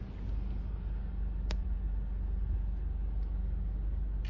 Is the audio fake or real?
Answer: real